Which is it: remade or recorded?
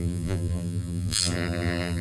remade